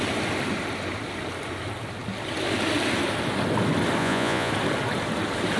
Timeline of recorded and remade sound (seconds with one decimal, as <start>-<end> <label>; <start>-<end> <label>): 0.0-4.0 recorded; 4.0-4.5 remade; 4.5-5.6 recorded